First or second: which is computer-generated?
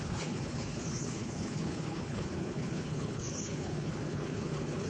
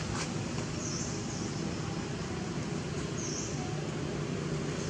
first